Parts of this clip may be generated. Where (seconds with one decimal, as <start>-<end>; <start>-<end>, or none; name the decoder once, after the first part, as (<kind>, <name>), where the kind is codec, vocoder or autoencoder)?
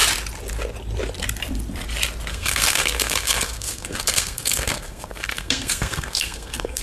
2.3-6.8 (codec, SNAC)